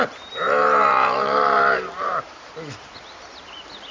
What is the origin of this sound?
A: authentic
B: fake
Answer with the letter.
B